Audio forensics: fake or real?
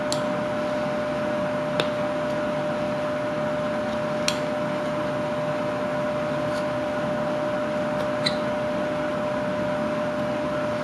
real